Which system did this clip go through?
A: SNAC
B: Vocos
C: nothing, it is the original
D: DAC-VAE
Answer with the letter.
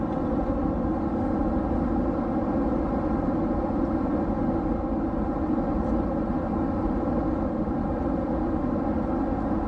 C